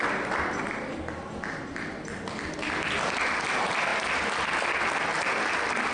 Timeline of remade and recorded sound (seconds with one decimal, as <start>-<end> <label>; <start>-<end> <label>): 0.0-5.9 recorded